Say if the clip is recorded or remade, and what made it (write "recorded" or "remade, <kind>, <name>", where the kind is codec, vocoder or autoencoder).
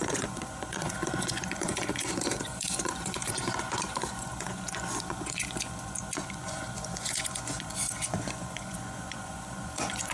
remade, vocoder, Vocos